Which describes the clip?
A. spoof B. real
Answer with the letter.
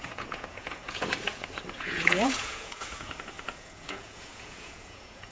A